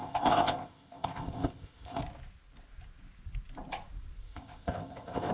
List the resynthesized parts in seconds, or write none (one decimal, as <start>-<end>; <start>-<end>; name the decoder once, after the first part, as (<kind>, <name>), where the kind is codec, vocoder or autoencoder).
0.0-2.0 (codec, ZipCodec); 4.2-5.3